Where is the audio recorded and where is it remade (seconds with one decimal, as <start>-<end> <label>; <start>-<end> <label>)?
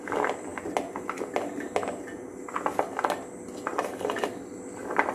0.0-5.1 recorded